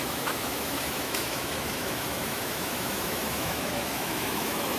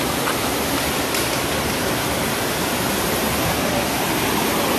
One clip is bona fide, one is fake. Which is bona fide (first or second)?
second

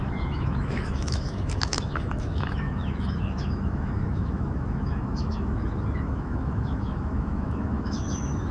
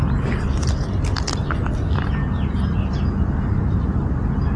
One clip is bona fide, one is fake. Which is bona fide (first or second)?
second